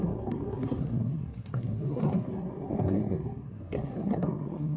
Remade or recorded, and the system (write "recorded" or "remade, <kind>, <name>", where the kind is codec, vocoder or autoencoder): remade, codec, SNAC